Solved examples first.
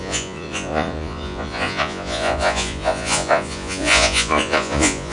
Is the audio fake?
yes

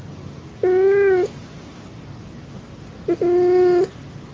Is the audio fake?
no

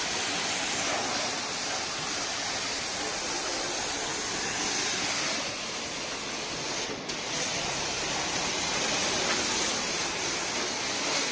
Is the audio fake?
no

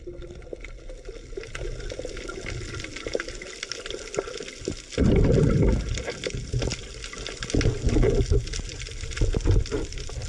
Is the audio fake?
no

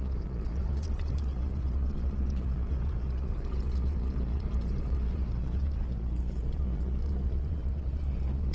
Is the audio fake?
yes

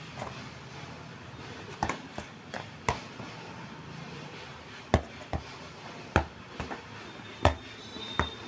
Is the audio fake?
no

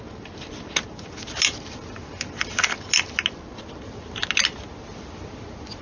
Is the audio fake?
no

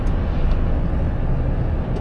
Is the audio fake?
no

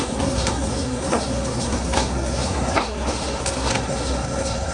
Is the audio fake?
yes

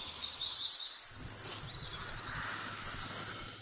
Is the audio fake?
no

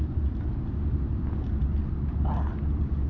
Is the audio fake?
no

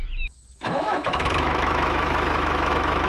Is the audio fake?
yes